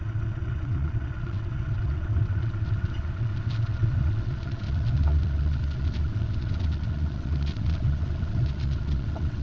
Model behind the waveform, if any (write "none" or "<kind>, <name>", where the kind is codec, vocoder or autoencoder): vocoder, WaveNeXt